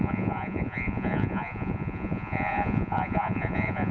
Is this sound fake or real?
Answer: fake